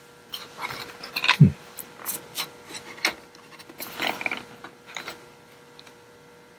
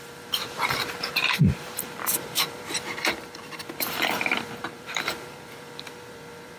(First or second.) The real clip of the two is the first